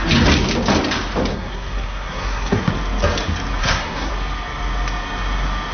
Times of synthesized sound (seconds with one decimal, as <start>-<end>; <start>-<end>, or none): 1.3-2.7; 3.6-4.1